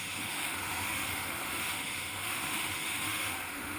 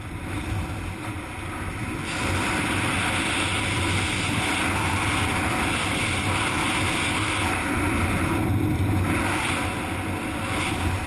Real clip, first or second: second